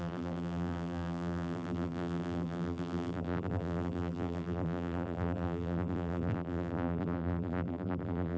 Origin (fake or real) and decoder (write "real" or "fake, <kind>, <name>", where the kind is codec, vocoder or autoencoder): fake, vocoder, BigVGAN v2